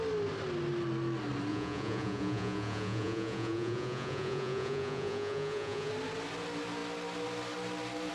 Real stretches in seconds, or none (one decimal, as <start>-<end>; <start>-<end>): 0.0-1.5; 5.9-8.1